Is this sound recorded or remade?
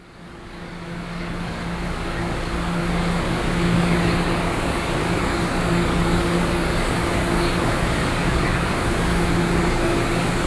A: remade